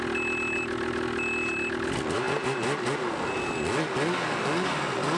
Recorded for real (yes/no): yes